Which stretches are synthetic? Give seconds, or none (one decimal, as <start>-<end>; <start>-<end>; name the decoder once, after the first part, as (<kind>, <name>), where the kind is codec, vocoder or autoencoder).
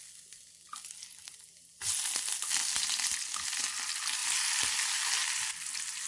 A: none